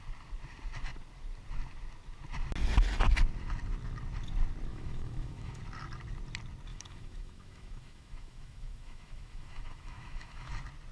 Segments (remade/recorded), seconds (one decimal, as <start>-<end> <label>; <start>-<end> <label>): 0.0-4.7 recorded; 4.7-5.6 remade; 5.6-6.7 recorded; 6.7-10.5 remade; 10.5-10.9 recorded